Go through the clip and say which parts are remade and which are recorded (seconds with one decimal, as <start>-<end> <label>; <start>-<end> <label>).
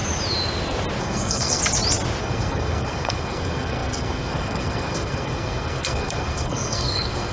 0.0-1.0 recorded; 1.0-1.6 remade; 1.6-2.2 recorded; 2.2-7.3 remade